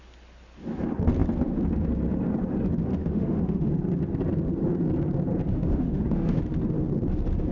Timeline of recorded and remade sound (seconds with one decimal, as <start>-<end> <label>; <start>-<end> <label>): 0.0-2.9 recorded; 2.9-3.7 remade; 3.7-5.5 recorded; 5.5-6.4 remade; 6.4-7.5 recorded